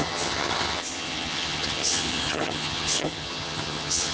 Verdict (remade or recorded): remade